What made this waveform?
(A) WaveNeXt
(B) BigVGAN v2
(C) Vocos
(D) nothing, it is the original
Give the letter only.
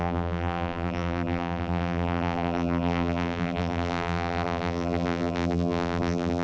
B